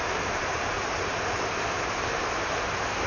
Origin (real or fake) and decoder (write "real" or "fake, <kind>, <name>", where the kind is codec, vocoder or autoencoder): fake, vocoder, BigVGAN v2